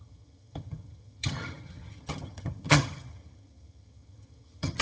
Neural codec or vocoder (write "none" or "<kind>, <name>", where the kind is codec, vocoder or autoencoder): vocoder, HiFi-GAN